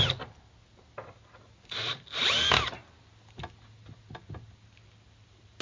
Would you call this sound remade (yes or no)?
no